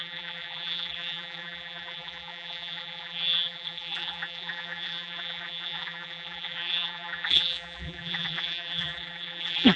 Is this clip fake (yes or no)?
yes